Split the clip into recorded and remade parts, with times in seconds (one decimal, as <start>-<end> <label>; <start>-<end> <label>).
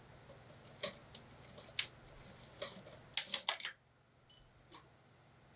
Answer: 0.0-5.6 recorded